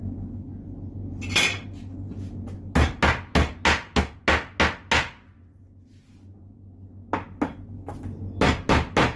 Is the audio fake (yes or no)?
no